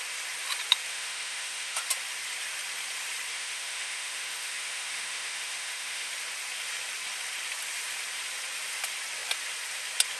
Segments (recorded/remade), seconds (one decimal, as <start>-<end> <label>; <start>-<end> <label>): 0.0-0.9 recorded; 0.9-1.8 remade; 1.8-3.3 recorded; 3.3-6.1 remade; 6.1-10.2 recorded